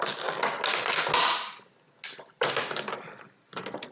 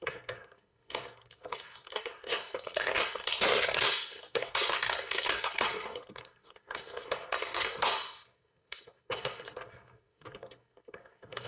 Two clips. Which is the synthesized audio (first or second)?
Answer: second